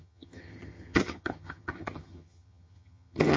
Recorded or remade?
remade